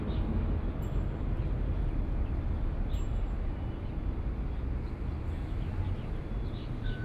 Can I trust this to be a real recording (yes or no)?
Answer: yes